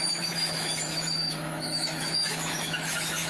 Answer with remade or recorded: remade